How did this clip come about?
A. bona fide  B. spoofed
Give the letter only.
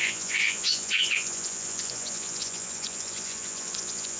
B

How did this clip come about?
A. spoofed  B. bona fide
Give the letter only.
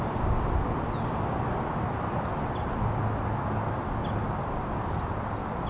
B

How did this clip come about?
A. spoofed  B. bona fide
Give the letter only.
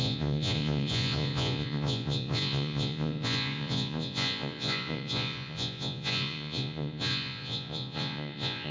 A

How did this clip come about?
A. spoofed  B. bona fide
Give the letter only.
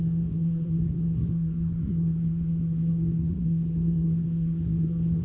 A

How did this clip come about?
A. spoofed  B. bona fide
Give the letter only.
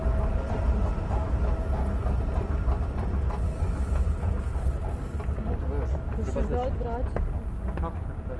B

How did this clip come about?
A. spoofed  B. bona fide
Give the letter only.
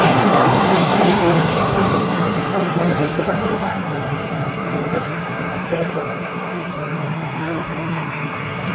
A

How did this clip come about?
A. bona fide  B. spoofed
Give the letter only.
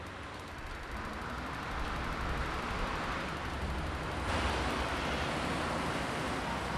A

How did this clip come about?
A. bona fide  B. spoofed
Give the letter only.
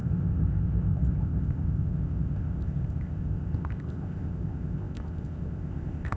B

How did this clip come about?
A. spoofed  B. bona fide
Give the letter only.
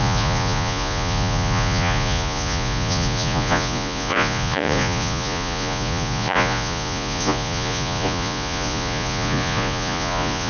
A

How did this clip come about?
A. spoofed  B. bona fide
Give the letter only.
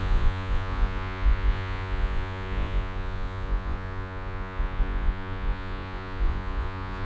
A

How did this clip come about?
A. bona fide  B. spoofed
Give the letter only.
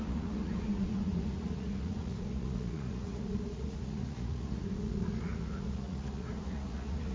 B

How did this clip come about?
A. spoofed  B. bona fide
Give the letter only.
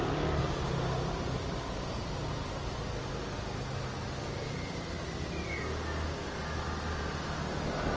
B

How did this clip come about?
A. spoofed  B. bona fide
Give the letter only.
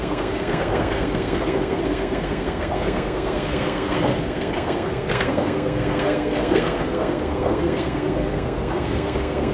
A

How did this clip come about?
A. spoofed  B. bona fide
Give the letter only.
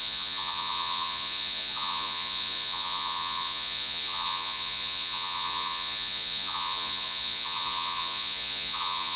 A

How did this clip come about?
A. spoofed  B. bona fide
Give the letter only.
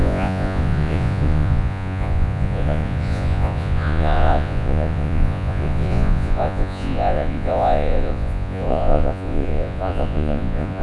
A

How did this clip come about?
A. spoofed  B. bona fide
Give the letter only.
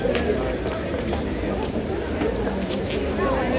B